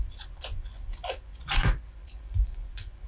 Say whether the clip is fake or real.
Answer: fake